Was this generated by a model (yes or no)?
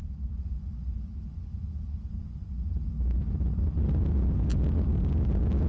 no